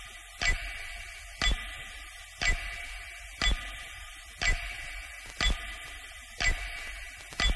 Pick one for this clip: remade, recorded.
recorded